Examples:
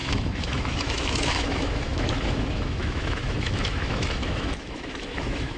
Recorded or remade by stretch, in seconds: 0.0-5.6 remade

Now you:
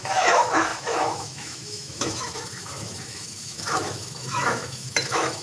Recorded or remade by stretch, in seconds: 0.0-5.4 remade

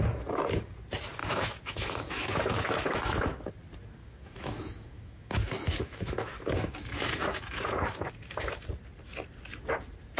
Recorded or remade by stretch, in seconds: 0.0-1.2 recorded; 1.2-3.5 remade; 3.5-4.0 recorded; 4.0-8.1 remade; 8.1-10.2 recorded

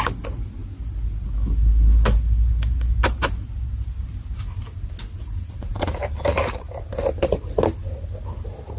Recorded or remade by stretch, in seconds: 0.0-8.8 recorded